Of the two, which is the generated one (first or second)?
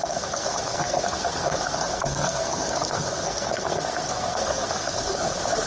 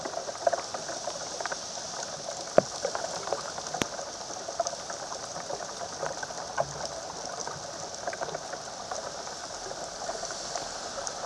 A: first